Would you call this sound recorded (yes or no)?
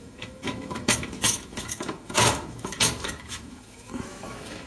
no